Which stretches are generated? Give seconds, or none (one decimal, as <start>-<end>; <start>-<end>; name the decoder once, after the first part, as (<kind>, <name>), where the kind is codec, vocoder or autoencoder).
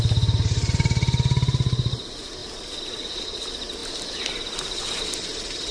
none